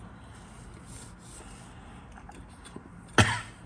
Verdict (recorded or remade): recorded